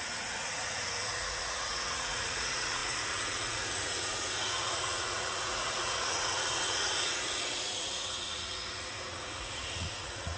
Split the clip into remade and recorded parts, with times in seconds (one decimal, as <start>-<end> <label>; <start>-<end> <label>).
0.0-10.4 remade